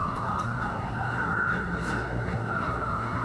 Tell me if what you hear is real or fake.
fake